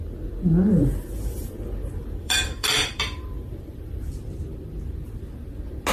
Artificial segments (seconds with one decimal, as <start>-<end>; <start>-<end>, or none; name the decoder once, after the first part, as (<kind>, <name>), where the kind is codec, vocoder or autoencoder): 0.8-4.2 (vocoder, BigVGAN v2)